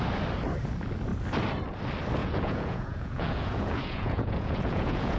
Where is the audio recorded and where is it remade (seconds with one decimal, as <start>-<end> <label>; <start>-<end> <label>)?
0.0-2.2 recorded; 2.2-5.2 remade